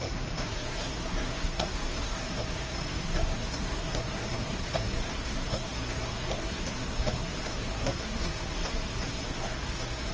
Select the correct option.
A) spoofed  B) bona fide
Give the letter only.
A